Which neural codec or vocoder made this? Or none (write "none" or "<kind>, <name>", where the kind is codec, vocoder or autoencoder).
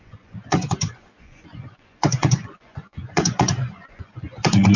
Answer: vocoder, Vocos